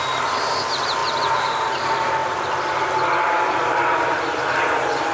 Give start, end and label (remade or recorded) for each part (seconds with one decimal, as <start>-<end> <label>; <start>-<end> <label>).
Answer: 0.0-5.1 recorded